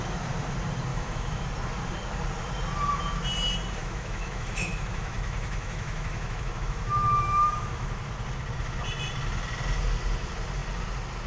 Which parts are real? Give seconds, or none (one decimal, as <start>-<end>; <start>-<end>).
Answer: 0.0-0.9; 1.5-3.8; 8.0-11.3